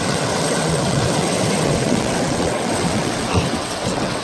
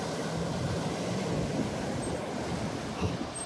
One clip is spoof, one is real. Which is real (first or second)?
second